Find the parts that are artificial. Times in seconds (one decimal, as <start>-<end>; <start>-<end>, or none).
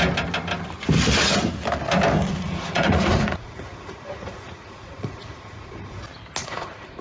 2.3-6.0; 6.4-7.0